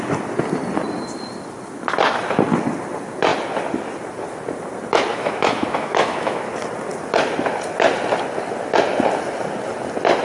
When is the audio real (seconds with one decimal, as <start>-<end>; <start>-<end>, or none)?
0.0-5.1; 6.5-10.2